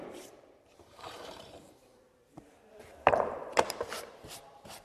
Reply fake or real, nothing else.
fake